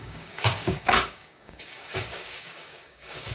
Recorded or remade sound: remade